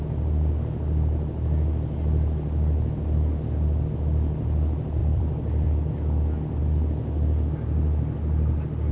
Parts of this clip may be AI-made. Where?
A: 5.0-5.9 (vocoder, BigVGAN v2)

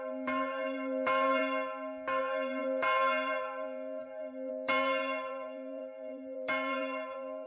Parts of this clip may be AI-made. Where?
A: 0.0-1.4 (vocoder, BigVGAN v2); 2.2-7.5

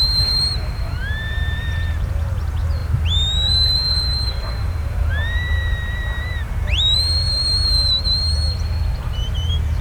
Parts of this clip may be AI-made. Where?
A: 0.0-9.8 (vocoder, BigVGAN v2)

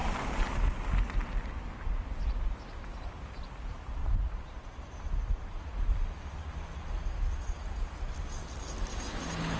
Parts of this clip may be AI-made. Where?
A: 4.0-5.6 (vocoder, BigVGAN v2)